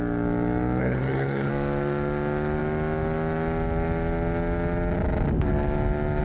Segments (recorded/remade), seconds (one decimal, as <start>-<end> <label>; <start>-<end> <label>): 0.0-0.8 recorded; 0.8-1.5 remade; 1.5-6.2 recorded